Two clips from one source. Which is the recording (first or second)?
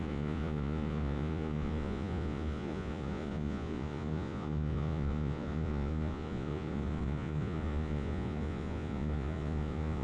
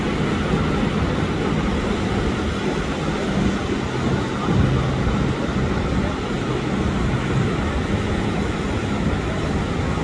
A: second